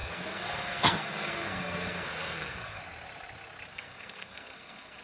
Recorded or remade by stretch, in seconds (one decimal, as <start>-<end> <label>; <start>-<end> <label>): 0.0-2.8 remade; 2.8-3.7 recorded; 3.7-5.0 remade